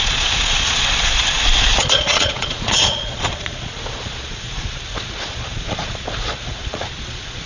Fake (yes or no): yes